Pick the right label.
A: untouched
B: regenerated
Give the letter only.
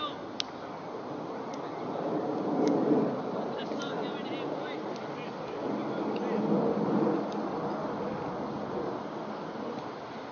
A